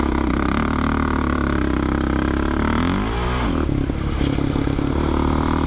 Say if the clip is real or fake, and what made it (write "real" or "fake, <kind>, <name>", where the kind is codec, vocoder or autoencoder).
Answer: real